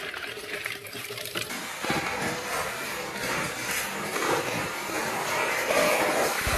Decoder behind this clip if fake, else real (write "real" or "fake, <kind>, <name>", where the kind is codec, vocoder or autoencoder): fake, vocoder, BigVGAN v2